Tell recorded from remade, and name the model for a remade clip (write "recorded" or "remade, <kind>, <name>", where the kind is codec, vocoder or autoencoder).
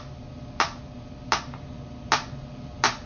recorded